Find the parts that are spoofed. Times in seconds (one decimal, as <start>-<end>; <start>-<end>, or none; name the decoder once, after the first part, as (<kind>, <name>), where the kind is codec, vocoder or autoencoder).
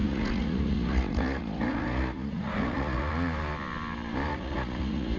0.0-3.1 (vocoder, Vocos); 4.3-5.2